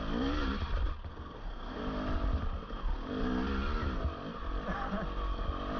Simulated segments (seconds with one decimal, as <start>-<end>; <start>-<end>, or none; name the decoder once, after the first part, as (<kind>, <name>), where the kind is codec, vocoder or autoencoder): 1.1-1.8 (codec, SNAC)